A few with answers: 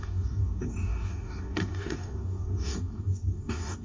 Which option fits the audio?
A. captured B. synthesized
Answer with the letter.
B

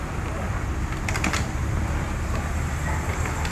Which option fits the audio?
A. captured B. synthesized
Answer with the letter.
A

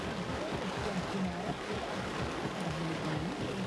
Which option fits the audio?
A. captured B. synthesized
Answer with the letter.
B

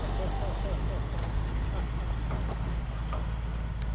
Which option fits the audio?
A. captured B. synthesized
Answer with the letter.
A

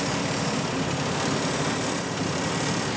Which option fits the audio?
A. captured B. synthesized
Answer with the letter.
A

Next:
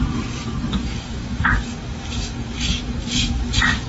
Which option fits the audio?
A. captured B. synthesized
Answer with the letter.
B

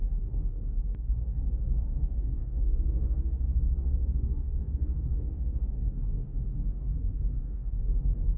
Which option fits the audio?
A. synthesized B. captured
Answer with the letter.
A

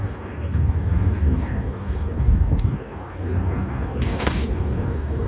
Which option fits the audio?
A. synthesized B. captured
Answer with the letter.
A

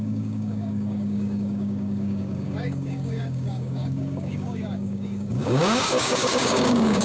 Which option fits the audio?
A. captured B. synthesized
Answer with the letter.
B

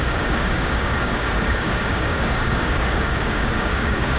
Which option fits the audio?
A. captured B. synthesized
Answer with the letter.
B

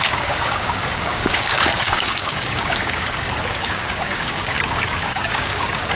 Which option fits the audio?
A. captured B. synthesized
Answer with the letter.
B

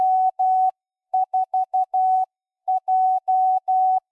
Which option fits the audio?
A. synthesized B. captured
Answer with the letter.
A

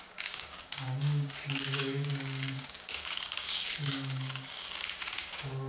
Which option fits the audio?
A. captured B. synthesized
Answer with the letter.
B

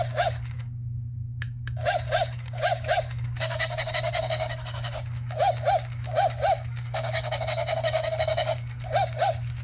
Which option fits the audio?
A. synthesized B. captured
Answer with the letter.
A